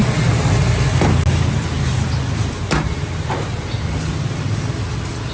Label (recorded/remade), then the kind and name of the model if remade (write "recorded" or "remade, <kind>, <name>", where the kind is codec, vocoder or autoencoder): recorded